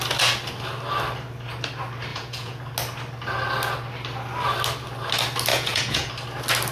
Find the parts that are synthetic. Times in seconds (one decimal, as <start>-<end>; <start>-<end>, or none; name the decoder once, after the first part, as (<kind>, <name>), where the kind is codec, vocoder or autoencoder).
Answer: 2.1-2.6 (vocoder, Vocos); 5.5-6.1